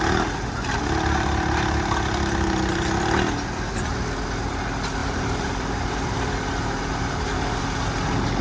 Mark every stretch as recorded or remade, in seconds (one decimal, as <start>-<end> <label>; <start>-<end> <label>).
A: 0.0-5.0 recorded; 5.0-7.6 remade; 7.6-8.4 recorded